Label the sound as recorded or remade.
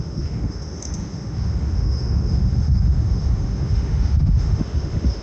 remade